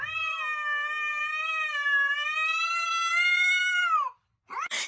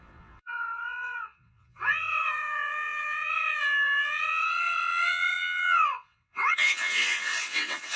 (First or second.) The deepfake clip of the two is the second